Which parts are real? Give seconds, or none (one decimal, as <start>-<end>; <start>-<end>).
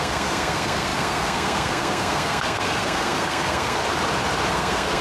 3.8-4.5